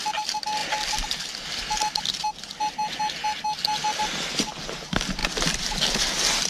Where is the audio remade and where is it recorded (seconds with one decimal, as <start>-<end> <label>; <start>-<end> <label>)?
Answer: 0.0-5.2 recorded; 5.2-5.7 remade; 5.7-6.5 recorded